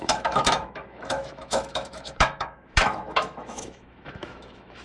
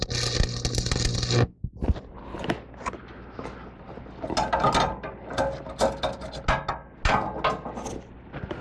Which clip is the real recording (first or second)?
second